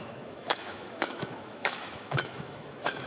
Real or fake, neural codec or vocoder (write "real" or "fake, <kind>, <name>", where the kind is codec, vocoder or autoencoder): fake, autoencoder, DAC-VAE